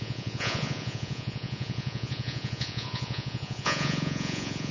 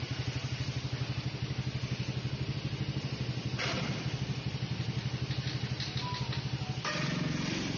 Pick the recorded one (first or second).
second